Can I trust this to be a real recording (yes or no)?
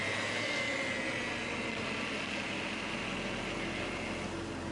yes